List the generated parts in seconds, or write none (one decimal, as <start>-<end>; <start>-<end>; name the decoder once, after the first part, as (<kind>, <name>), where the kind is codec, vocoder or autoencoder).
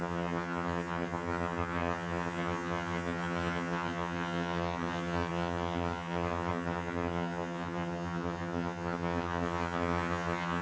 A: 0.0-10.6 (vocoder, HiFi-GAN)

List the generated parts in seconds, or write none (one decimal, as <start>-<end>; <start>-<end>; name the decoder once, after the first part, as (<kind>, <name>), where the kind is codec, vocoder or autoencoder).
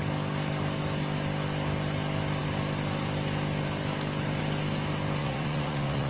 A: 5.2-6.1 (vocoder, Vocos)